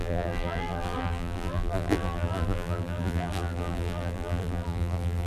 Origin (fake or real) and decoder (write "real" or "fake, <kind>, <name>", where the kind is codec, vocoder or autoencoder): fake, vocoder, BigVGAN v2